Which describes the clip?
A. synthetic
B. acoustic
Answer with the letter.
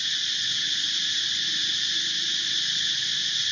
B